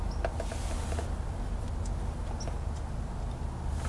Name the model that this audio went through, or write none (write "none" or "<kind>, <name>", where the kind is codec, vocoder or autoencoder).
none